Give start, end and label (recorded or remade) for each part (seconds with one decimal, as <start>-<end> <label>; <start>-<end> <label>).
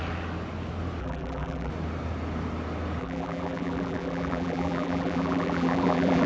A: 0.0-1.0 recorded; 1.0-1.7 remade; 1.7-3.0 recorded; 3.0-6.3 remade